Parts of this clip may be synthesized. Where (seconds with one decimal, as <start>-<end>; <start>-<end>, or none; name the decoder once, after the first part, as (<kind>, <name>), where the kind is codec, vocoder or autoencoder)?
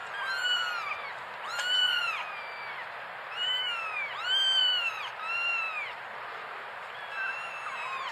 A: none